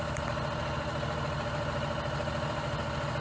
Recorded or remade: recorded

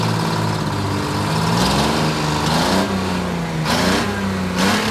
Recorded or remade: recorded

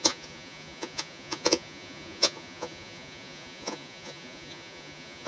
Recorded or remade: remade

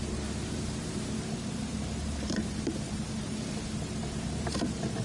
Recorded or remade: remade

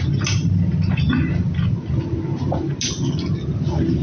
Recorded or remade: recorded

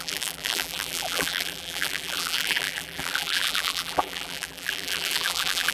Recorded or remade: remade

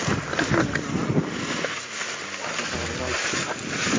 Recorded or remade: recorded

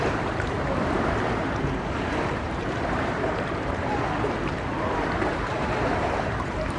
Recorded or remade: remade